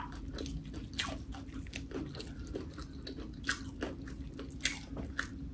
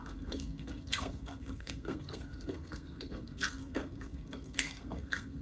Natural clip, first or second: first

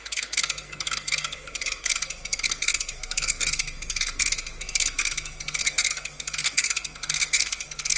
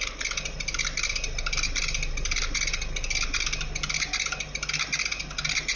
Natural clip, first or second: second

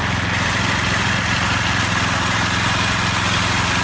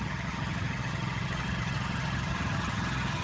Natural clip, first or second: first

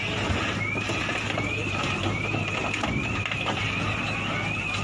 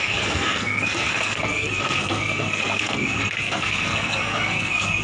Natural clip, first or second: first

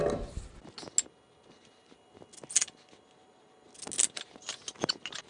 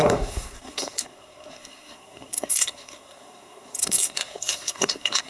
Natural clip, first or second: first